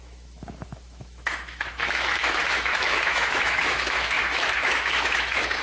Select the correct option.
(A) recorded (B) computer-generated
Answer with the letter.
B